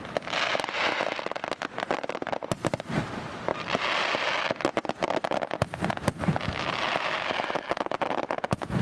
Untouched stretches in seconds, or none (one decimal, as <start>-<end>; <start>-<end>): 0.0-8.8